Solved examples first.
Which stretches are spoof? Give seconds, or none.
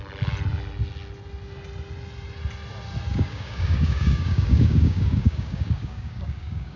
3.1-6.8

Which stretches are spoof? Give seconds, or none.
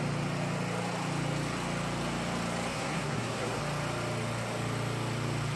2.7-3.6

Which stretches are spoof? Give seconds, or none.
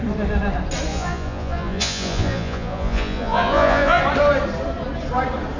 0.9-4.0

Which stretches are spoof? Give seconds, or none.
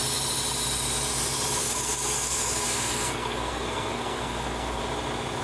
1.6-4.8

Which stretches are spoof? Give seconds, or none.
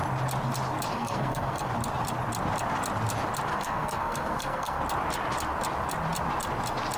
0.9-1.7; 3.5-4.8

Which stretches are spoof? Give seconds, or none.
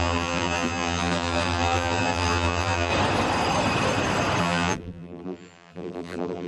0.0-2.9; 4.4-6.5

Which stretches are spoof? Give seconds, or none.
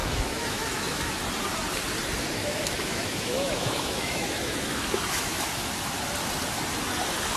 0.0-1.2; 2.4-5.7